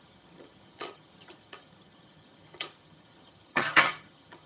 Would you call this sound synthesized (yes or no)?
yes